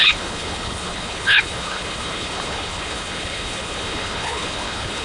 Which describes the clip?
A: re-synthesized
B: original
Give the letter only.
A